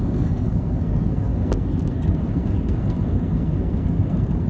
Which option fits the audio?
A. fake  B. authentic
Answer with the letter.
A